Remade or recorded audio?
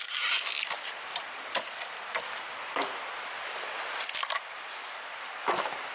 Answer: remade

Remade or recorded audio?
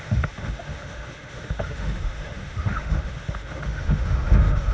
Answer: remade